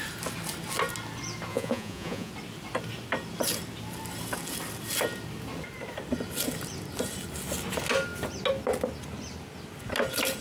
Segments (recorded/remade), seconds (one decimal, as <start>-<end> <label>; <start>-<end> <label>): 0.0-1.5 recorded; 1.5-2.3 remade; 2.3-10.4 recorded